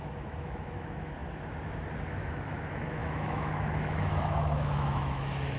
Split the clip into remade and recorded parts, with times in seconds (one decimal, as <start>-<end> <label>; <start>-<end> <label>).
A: 0.0-1.2 remade; 1.2-2.1 recorded; 2.1-5.6 remade